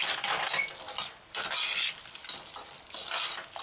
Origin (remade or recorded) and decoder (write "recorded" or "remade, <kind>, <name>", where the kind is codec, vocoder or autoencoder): recorded